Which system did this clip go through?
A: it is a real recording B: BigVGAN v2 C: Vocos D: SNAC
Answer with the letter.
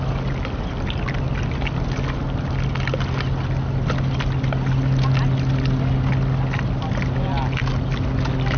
A